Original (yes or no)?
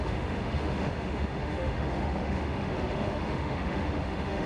no